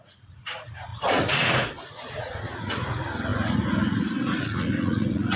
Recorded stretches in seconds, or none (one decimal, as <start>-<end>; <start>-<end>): none